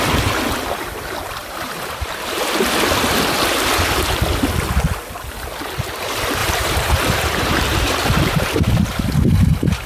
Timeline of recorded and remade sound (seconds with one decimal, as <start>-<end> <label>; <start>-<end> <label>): 0.0-1.4 recorded; 1.4-2.1 remade; 2.1-6.4 recorded; 6.4-8.6 remade; 8.6-9.9 recorded